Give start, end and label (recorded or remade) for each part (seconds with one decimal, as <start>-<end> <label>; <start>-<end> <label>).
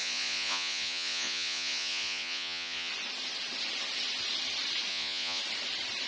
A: 0.0-2.9 remade; 2.9-4.9 recorded; 4.9-5.4 remade; 5.4-6.1 recorded